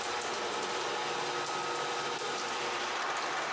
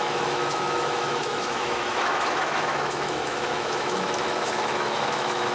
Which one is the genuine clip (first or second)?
first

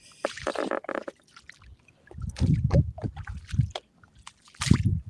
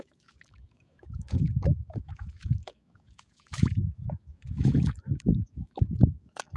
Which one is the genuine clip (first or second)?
first